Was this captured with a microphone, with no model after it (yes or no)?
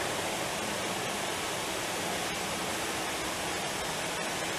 yes